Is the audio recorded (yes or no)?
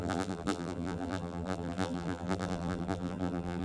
no